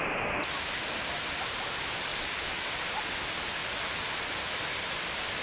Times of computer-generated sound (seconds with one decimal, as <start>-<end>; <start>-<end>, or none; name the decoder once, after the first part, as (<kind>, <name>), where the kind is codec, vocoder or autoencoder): 2.1-2.7 (codec, DAC)